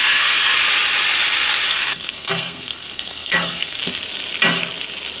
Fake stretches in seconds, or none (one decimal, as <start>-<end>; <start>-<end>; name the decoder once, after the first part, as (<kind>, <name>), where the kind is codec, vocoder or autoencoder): 0.0-0.5 (codec, SNAC); 1.7-3.8